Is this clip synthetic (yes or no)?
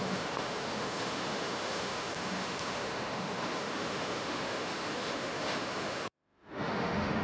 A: yes